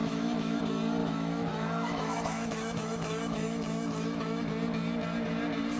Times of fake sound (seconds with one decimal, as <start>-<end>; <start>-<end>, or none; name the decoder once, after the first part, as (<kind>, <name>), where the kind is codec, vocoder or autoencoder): 0.0-0.6 (autoencoder, DAC-VAE); 1.0-4.5